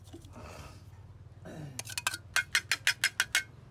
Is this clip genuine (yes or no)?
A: yes